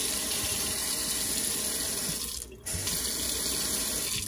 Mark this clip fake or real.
real